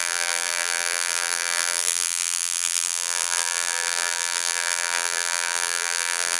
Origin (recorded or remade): remade